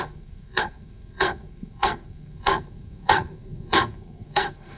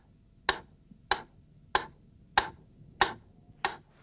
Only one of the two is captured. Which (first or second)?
second